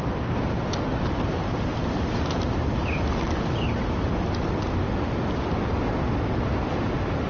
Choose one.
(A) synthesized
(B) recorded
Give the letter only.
B